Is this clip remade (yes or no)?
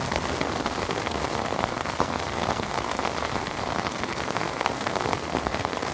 yes